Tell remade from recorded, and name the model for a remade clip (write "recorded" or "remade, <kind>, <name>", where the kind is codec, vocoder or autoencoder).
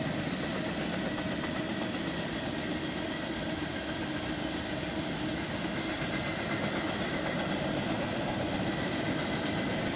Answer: recorded